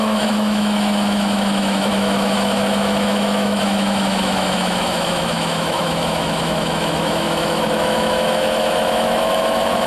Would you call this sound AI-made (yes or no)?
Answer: yes